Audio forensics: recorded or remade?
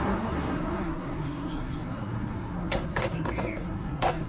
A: remade